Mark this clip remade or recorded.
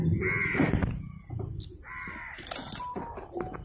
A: recorded